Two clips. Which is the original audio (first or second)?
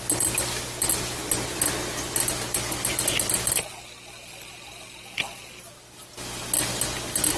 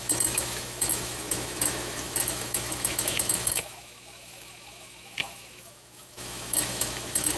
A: first